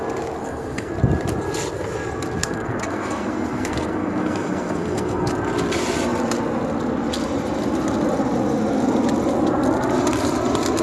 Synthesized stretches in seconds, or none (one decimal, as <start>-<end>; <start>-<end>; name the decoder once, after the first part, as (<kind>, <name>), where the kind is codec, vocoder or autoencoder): 0.4-0.9 (codec, SNAC); 2.4-5.3